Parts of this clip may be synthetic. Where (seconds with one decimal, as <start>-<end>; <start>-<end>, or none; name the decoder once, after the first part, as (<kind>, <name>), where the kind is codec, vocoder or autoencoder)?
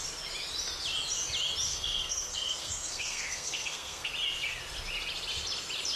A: 1.7-4.1 (codec, SNAC)